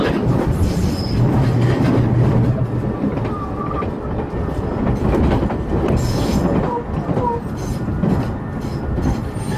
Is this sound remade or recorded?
recorded